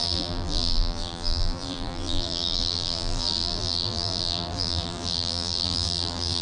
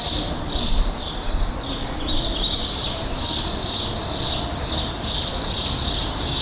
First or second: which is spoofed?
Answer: first